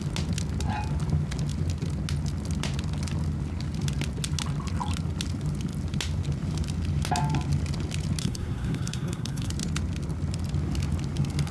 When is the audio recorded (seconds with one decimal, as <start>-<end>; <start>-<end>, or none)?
0.0-8.2; 9.5-11.5